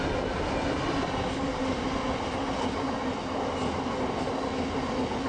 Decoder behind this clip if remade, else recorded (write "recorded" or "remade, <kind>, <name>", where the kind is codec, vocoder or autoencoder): recorded